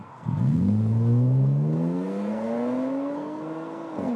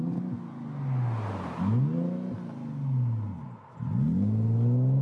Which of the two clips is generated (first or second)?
first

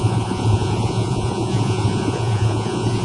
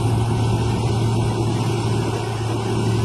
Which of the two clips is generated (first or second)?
first